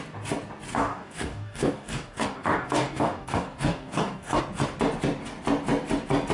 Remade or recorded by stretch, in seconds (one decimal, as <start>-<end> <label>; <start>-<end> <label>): 0.0-0.7 recorded; 0.7-4.4 remade; 4.4-6.3 recorded